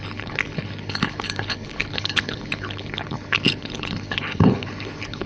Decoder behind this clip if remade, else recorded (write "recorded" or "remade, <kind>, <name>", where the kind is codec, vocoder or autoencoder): remade, codec, HILCodec